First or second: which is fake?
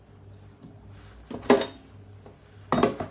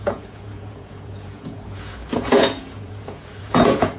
second